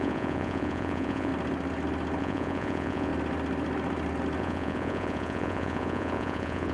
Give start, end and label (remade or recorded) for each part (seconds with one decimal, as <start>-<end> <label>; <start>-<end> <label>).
0.0-1.3 remade; 1.3-2.2 recorded; 2.2-3.1 remade; 3.1-4.4 recorded; 4.4-6.7 remade